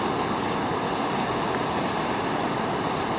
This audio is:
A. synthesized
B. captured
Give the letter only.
B